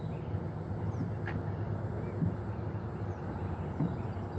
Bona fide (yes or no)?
yes